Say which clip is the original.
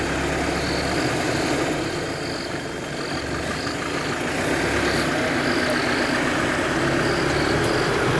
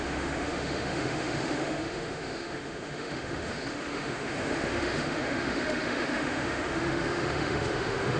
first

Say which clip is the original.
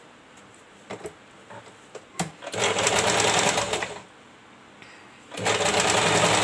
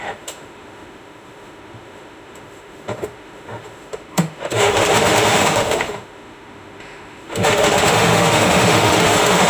first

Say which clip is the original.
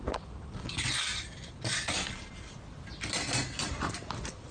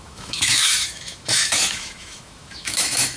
first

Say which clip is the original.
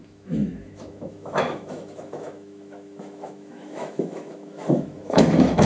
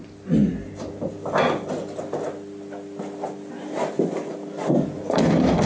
second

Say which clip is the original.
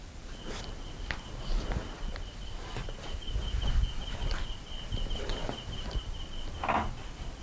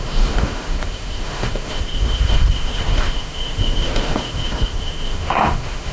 first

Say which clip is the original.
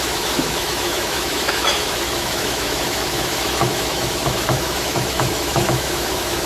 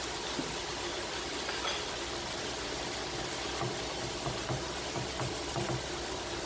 second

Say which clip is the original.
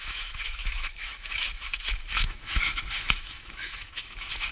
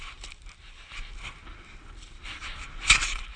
second